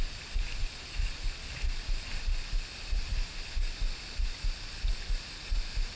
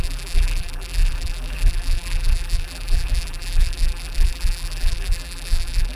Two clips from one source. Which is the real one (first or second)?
first